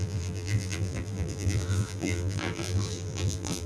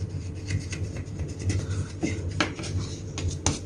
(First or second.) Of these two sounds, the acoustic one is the second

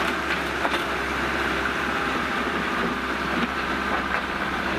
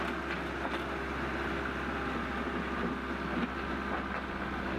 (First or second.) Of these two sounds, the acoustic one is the second